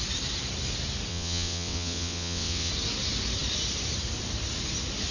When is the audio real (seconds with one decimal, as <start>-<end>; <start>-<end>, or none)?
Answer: 0.0-1.1; 2.7-5.1